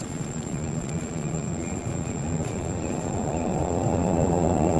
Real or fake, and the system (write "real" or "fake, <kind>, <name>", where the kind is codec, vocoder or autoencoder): fake, vocoder, Vocos